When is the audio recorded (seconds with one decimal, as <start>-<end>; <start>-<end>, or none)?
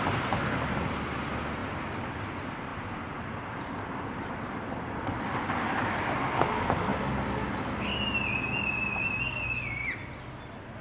0.0-1.6; 2.3-2.7; 4.3-10.8